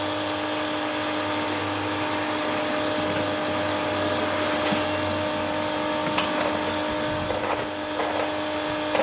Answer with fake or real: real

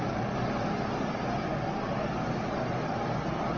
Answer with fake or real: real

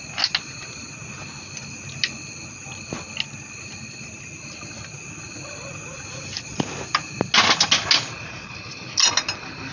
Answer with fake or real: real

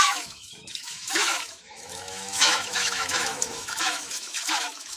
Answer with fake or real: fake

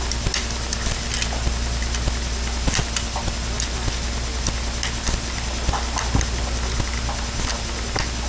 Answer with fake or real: real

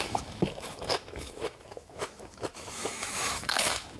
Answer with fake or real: fake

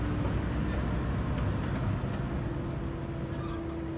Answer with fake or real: real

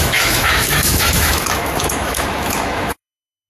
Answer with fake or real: fake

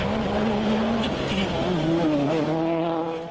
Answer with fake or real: real